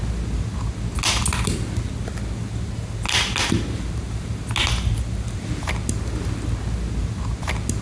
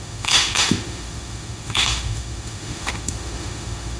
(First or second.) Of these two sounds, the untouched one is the first